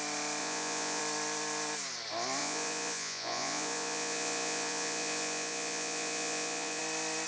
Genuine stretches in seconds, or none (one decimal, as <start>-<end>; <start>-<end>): 0.0-0.4; 1.0-2.4; 6.8-7.3